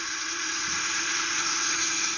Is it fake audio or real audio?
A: fake